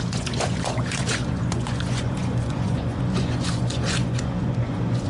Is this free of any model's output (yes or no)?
no